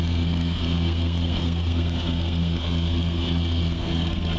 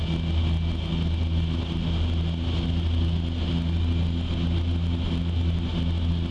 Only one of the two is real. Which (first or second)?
second